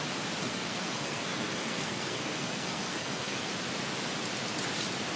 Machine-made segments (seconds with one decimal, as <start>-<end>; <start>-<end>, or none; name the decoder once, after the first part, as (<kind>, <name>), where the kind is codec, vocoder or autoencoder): 0.4-3.5 (codec, SNAC)